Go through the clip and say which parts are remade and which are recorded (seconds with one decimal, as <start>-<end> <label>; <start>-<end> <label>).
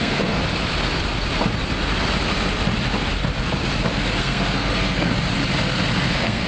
0.0-0.4 remade; 0.4-4.2 recorded; 4.2-5.1 remade; 5.1-6.1 recorded; 6.1-6.5 remade